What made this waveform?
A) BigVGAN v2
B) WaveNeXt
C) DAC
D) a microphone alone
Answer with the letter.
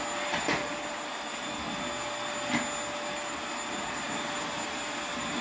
D